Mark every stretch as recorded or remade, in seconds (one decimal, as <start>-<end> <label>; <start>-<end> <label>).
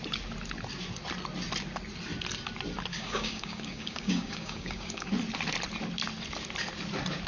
0.0-2.9 recorded; 2.9-5.1 remade; 5.1-7.3 recorded